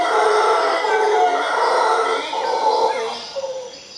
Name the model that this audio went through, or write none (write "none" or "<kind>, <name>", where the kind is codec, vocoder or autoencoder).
none